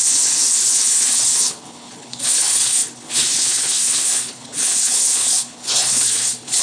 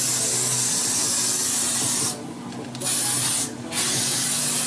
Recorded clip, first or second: second